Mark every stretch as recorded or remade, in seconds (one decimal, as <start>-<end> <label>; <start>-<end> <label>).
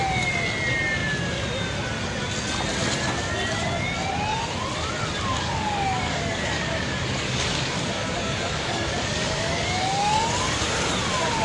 0.0-5.3 recorded; 5.3-10.3 remade; 10.3-11.4 recorded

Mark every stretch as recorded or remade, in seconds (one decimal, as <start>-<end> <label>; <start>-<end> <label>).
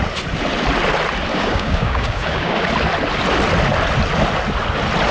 0.0-1.3 recorded; 1.3-2.7 remade; 2.7-5.1 recorded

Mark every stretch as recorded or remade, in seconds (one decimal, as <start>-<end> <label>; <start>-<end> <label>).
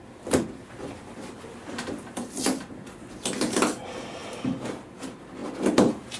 0.0-6.2 recorded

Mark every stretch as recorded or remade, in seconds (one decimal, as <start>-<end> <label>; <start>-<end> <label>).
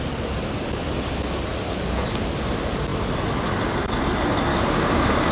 0.0-4.5 recorded; 4.5-5.3 remade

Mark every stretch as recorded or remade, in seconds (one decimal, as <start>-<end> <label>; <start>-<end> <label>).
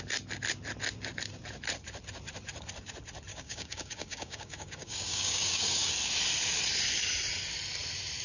0.0-3.3 recorded; 3.3-5.9 remade; 5.9-8.2 recorded